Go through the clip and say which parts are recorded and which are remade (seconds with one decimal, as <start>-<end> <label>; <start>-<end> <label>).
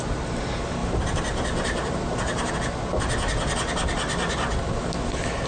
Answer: 0.0-0.8 recorded; 0.8-2.5 remade; 2.5-5.5 recorded